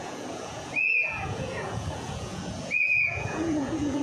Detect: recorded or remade remade